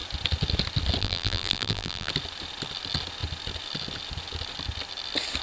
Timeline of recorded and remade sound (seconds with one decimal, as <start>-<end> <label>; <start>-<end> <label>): 0.0-1.0 recorded; 1.0-2.1 remade; 2.1-5.4 recorded